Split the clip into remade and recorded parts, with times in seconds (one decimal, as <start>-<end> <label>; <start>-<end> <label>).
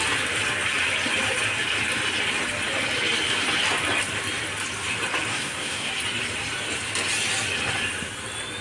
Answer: 0.0-5.3 recorded; 5.3-5.9 remade; 5.9-8.6 recorded